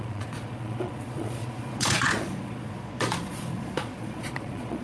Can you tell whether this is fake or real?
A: fake